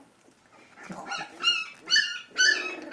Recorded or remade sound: recorded